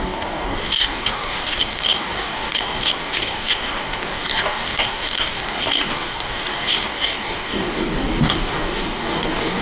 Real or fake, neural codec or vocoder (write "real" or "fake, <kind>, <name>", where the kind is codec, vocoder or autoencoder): fake, codec, DAC